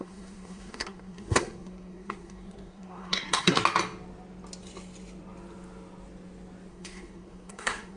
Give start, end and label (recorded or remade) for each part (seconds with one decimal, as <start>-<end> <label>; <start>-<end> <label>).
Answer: 0.0-3.6 remade; 3.6-6.7 recorded; 6.7-8.0 remade